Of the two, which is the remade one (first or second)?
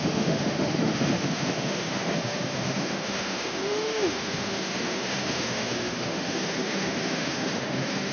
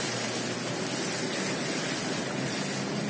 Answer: first